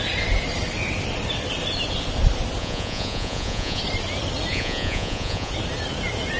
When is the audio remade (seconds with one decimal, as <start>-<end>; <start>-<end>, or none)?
2.6-3.8; 4.5-5.5